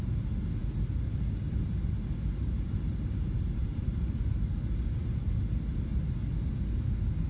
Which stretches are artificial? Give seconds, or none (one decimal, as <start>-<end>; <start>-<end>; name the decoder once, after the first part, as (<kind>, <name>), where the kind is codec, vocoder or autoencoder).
3.6-4.4 (vocoder, BigVGAN v2)